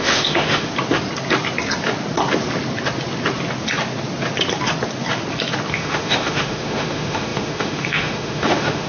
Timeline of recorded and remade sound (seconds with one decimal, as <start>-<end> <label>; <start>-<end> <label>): 0.0-0.7 remade; 0.7-5.7 recorded; 5.7-8.9 remade